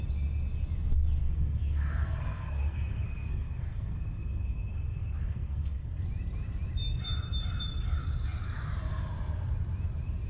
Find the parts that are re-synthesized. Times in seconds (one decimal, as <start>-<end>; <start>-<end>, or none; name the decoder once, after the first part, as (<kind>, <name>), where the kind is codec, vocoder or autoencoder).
1.2-6.0 (codec, SNAC)